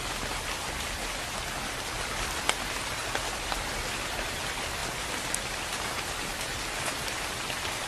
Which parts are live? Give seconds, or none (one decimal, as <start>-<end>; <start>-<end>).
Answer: 0.0-7.9